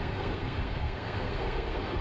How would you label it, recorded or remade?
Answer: remade